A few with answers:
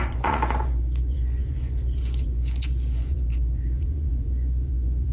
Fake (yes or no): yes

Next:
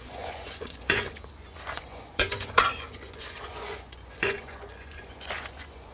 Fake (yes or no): yes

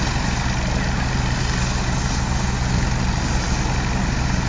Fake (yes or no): no